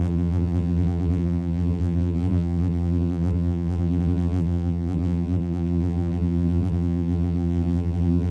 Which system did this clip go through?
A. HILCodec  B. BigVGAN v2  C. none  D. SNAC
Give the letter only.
B